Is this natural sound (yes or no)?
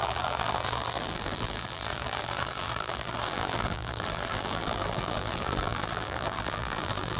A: no